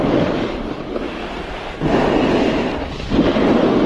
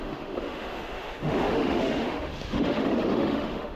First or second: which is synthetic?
second